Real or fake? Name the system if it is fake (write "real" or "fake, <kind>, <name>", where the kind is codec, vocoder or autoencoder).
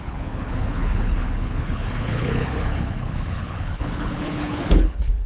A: fake, codec, HILCodec